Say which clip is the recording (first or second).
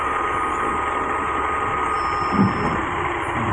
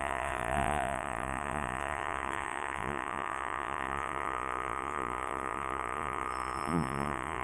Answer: first